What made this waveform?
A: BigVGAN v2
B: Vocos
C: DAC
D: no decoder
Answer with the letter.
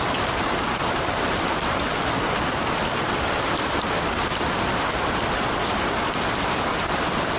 A